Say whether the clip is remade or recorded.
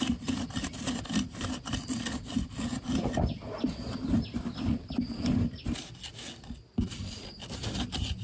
recorded